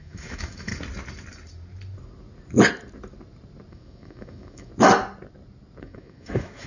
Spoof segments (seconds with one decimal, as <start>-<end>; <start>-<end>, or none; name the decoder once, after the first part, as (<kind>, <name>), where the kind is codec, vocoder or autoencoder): 0.0-0.7 (autoencoder, DAC-VAE); 3.7-4.7; 5.8-6.7